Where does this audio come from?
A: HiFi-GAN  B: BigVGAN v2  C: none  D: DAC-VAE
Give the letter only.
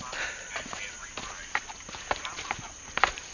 C